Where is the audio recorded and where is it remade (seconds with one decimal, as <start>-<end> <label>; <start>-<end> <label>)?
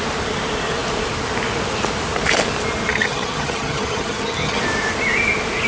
0.0-2.9 recorded; 2.9-4.6 remade; 4.6-5.7 recorded